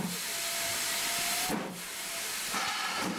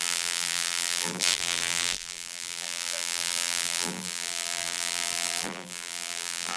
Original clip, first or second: first